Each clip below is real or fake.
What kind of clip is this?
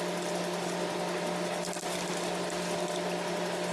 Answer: real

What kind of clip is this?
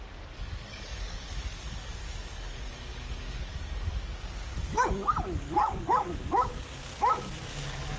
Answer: fake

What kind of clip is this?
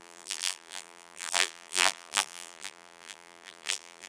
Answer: fake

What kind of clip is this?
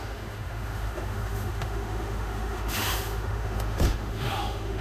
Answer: fake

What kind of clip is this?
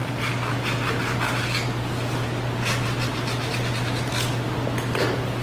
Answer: real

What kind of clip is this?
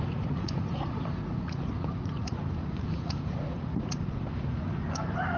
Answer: fake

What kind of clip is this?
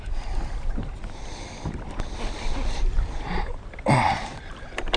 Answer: fake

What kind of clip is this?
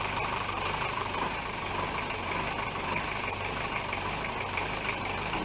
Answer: fake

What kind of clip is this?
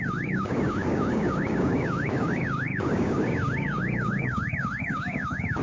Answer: fake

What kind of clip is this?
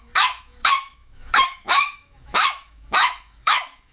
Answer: fake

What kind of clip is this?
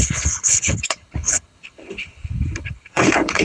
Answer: fake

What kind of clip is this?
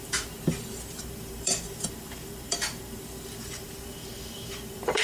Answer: fake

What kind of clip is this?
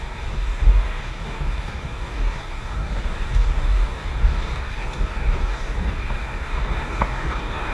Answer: fake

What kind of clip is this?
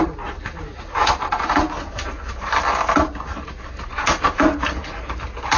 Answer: real